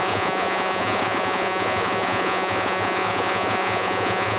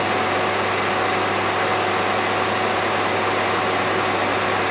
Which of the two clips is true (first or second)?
second